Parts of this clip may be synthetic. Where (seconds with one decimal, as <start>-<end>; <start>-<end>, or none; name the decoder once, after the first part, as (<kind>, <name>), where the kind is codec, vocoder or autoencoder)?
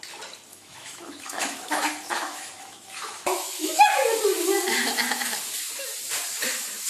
0.5-3.9 (autoencoder, DAC-VAE); 4.7-5.4